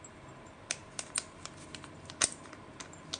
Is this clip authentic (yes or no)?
yes